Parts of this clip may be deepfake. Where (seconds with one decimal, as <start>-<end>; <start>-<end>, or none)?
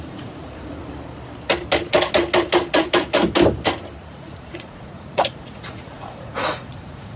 0.0-0.8; 4.0-7.2